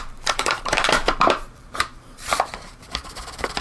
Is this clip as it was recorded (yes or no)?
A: no